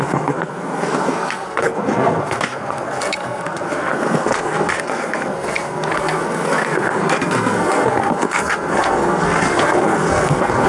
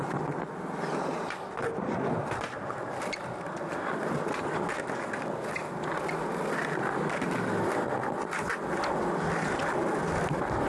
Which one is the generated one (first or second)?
first